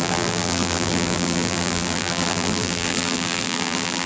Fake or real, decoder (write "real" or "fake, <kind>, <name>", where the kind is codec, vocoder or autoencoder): fake, vocoder, BigVGAN v2